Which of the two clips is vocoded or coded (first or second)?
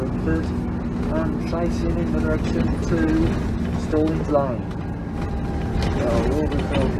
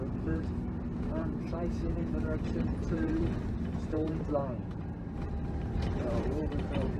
second